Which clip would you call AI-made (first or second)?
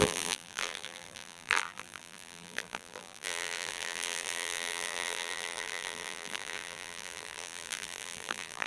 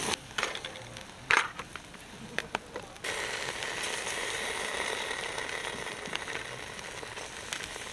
first